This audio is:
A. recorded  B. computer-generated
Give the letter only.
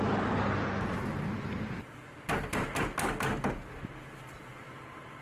A